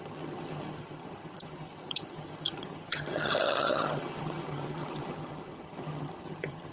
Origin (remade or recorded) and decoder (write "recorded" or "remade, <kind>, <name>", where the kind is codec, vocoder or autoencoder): remade, vocoder, HiFi-GAN